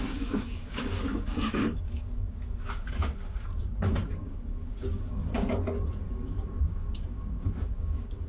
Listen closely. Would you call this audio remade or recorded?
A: remade